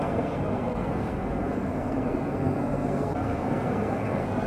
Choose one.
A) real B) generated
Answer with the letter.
B